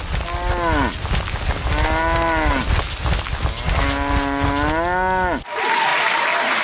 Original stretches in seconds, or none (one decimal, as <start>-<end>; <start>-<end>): 0.0-6.6